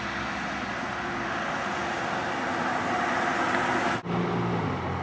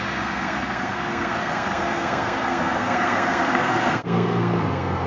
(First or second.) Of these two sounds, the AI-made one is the second